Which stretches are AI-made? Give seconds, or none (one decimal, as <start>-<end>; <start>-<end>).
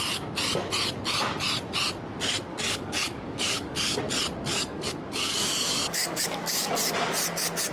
2.5-4.0; 4.5-6.7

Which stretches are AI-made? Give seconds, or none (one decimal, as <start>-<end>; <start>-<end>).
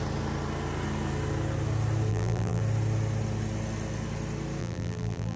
2.1-2.6; 4.6-5.4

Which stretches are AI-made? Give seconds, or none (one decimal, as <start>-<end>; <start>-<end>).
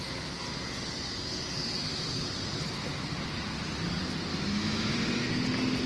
4.3-4.9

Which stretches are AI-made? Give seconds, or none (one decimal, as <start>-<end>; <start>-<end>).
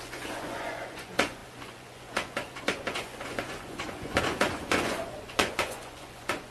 0.0-6.5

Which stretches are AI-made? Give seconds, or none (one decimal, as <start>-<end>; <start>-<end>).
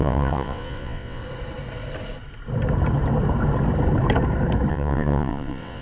0.0-1.2; 4.7-5.8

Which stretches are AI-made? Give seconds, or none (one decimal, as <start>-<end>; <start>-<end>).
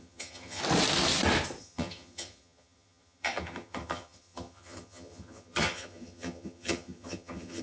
0.0-0.6; 1.6-7.6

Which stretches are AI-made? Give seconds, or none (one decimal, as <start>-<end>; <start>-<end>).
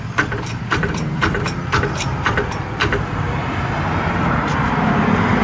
0.5-1.4; 3.4-4.1